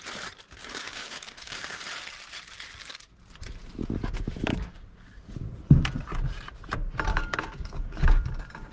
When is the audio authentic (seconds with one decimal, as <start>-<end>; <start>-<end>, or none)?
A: 0.0-0.6; 1.8-4.5; 5.3-7.1